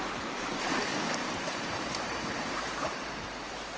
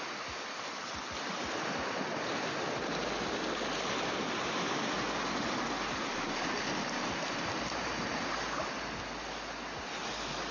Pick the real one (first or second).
second